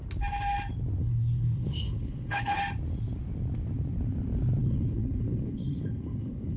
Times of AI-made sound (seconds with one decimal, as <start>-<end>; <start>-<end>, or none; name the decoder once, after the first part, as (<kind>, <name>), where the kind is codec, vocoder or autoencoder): 1.0-2.6 (codec, HILCodec); 4.6-6.6